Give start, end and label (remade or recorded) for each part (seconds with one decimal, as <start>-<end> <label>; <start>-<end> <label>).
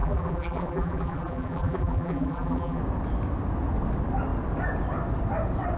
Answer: 0.0-2.8 remade; 2.8-5.8 recorded